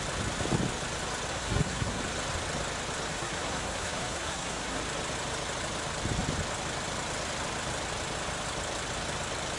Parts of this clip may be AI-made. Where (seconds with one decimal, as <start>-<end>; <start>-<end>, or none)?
1.3-2.0; 3.1-4.8